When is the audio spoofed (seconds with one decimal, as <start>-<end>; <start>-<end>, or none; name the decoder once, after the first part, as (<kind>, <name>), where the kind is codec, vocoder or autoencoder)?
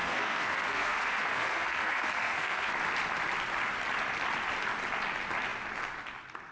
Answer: 0.0-2.7 (codec, SNAC)